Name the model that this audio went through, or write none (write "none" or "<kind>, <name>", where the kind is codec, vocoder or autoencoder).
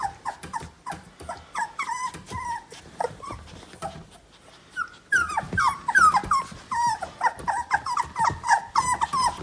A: none